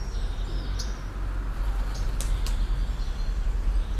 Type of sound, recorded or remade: recorded